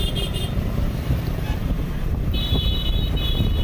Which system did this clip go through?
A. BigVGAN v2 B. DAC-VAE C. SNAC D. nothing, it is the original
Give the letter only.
A